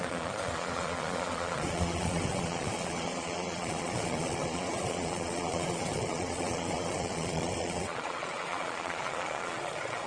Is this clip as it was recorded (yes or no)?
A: no